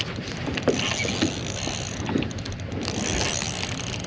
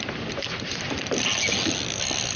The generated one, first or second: second